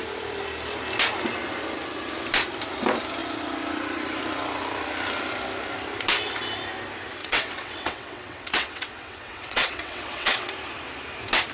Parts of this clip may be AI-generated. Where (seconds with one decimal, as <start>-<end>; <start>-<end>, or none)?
7.2-10.5